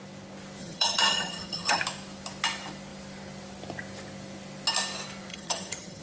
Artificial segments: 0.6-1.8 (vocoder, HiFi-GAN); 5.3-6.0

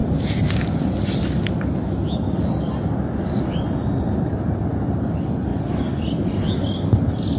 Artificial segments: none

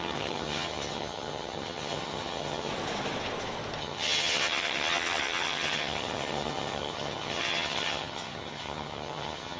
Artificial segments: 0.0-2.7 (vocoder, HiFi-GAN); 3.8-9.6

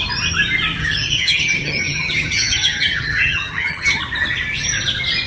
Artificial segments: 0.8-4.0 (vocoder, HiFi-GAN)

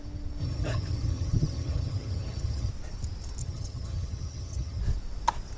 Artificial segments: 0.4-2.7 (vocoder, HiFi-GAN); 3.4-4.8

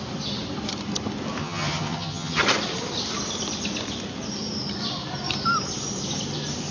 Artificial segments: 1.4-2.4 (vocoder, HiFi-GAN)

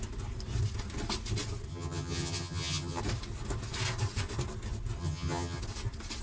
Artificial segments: 1.7-3.0 (vocoder, HiFi-GAN); 5.0-5.6